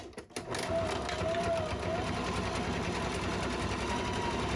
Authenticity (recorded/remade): recorded